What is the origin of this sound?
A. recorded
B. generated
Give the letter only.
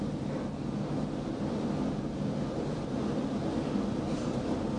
A